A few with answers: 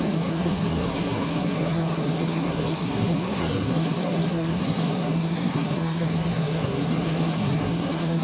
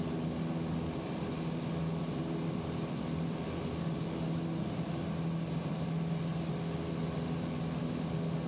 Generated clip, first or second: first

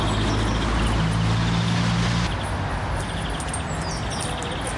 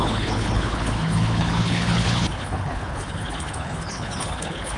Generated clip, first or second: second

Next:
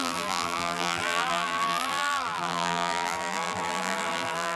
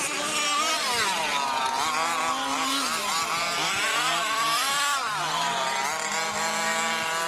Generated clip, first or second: first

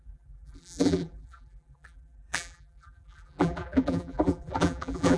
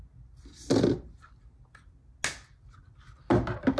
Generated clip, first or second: first